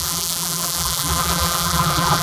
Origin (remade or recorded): remade